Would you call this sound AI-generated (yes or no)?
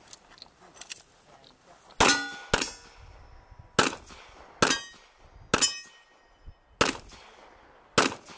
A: no